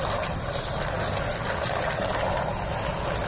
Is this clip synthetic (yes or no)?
no